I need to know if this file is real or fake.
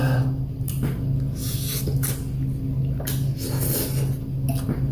real